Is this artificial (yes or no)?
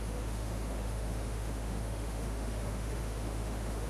yes